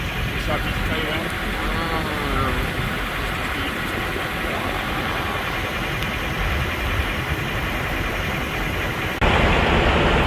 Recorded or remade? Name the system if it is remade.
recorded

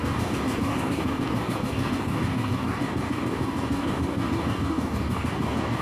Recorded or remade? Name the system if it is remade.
remade, codec, DAC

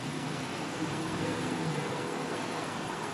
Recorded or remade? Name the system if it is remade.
remade, codec, SNAC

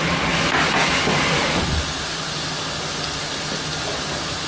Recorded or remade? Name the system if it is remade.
recorded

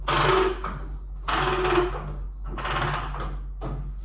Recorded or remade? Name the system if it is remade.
recorded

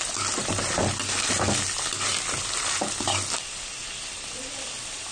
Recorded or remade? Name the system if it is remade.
recorded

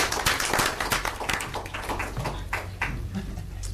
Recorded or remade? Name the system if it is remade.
recorded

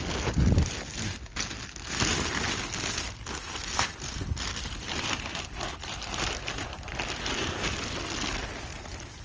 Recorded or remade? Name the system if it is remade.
recorded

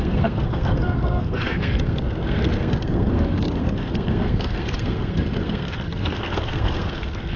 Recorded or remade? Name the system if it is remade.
remade, codec, SNAC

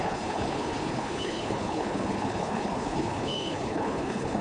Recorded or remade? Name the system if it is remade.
remade, codec, HILCodec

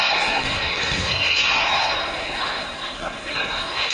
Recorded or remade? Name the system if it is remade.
remade, codec, SNAC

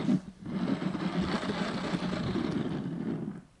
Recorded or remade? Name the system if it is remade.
recorded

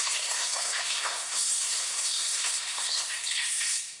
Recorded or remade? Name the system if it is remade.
remade, codec, SNAC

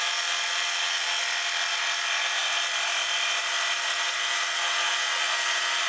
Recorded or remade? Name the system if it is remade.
recorded